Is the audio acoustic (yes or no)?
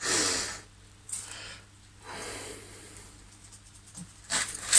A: yes